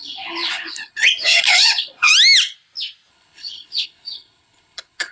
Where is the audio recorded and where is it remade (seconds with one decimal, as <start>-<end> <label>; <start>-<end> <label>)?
0.0-2.1 remade; 2.1-3.1 recorded; 3.1-5.1 remade